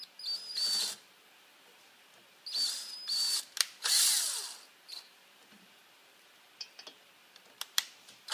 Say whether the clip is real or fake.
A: real